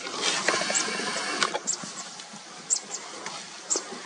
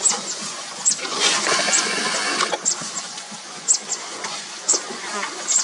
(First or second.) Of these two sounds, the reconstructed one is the second